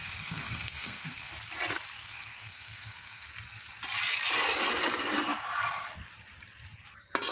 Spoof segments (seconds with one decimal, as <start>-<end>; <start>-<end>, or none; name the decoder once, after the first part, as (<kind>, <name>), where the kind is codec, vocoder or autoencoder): 0.0-1.3 (codec, SNAC); 2.0-3.3